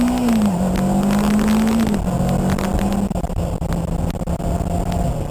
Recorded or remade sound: recorded